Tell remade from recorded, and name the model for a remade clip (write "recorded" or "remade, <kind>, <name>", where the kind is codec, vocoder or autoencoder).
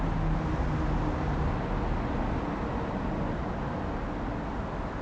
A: recorded